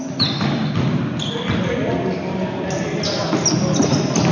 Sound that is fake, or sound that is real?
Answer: real